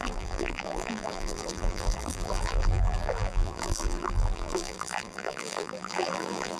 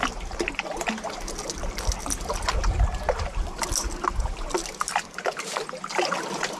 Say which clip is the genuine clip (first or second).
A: second